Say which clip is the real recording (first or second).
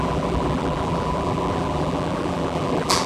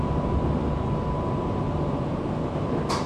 second